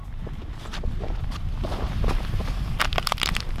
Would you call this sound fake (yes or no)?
yes